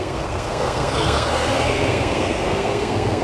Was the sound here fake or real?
fake